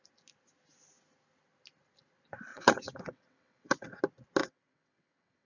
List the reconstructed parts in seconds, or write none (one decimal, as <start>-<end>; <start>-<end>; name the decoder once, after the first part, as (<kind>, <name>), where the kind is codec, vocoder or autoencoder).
2.5-4.0 (vocoder, WaveNeXt); 4.4-5.5